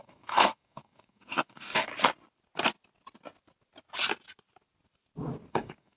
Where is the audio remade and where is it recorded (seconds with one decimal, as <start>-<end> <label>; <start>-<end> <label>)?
0.0-1.9 remade; 1.9-5.5 recorded; 5.5-6.0 remade